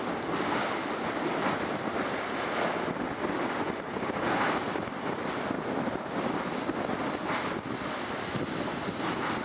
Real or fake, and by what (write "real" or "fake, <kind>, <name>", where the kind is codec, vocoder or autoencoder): real